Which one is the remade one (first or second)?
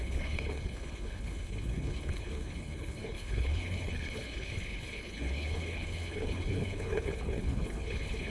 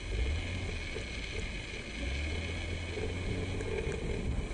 first